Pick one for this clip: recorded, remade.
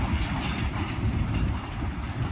recorded